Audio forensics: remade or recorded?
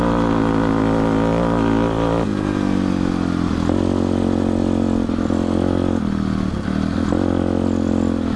recorded